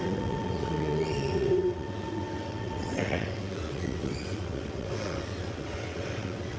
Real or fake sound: fake